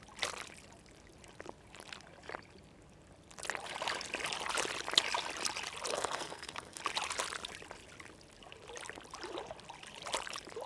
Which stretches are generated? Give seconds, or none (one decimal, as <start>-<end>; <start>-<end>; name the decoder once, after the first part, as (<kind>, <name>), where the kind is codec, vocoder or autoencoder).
5.9-6.8 (codec, SNAC)